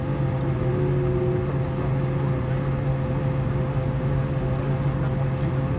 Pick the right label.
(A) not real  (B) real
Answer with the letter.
B